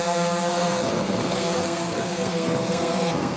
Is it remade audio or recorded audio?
remade